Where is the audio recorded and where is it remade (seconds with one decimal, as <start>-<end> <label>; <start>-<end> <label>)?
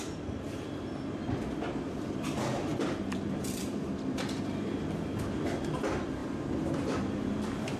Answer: 0.0-2.7 recorded; 2.7-3.9 remade; 3.9-6.2 recorded; 6.2-7.8 remade